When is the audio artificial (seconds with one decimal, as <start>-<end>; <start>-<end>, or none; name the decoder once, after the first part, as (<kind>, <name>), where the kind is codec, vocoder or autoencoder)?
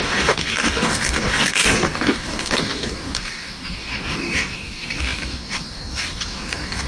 0.0-6.9 (codec, DAC)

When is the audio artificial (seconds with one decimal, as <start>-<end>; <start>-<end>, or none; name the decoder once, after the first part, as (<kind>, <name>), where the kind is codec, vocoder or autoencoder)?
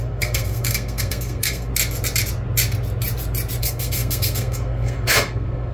0.0-1.7 (codec, SNAC); 3.6-5.7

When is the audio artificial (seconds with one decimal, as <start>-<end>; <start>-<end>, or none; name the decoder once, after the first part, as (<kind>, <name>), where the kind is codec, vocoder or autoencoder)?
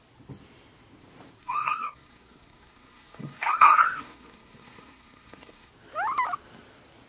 1.4-5.7 (codec, SNAC)